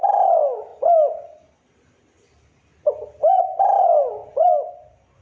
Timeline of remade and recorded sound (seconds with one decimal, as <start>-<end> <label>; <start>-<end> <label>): 0.0-5.2 recorded